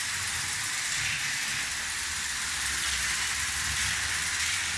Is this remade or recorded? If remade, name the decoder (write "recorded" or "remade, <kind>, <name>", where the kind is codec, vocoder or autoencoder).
recorded